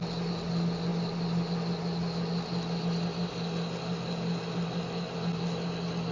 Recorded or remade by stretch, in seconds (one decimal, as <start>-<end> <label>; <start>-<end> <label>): 0.0-6.1 recorded